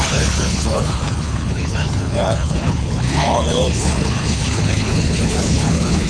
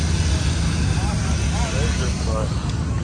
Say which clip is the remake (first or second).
first